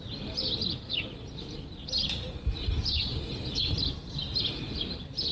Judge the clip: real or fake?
real